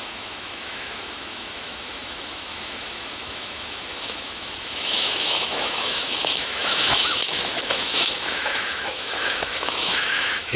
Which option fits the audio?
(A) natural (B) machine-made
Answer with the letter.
B